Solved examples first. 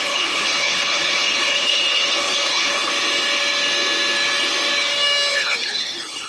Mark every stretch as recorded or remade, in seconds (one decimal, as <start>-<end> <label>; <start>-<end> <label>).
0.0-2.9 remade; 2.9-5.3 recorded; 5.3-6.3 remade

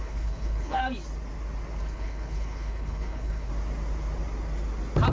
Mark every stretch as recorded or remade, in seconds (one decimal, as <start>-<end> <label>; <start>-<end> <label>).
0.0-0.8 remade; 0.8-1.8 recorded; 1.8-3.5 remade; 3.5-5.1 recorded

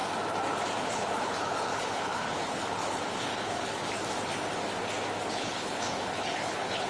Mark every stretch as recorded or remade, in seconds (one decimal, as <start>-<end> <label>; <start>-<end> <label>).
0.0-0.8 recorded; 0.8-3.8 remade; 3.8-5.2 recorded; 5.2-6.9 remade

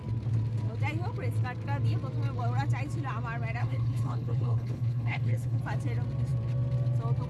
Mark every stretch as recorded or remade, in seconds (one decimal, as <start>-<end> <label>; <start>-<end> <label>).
0.0-3.6 recorded; 3.6-5.6 remade; 5.6-7.3 recorded

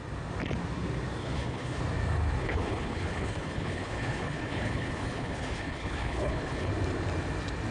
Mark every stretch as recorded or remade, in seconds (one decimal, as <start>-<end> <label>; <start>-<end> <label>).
0.0-1.2 recorded; 1.2-1.8 remade; 1.8-2.4 recorded; 2.4-6.7 remade; 6.7-7.7 recorded

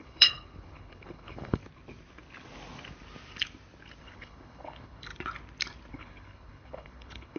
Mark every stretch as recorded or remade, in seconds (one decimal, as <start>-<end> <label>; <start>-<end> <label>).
0.0-1.6 remade; 1.6-4.0 recorded; 4.0-5.1 remade; 5.1-5.9 recorded; 5.9-7.4 remade

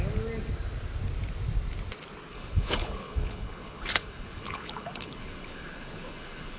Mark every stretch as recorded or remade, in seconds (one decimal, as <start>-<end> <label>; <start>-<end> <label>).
0.0-2.3 recorded; 2.3-6.6 remade